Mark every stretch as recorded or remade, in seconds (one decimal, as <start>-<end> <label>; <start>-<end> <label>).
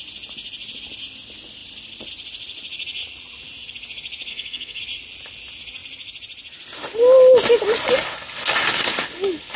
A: 0.0-4.3 recorded; 4.3-4.8 remade; 4.8-9.6 recorded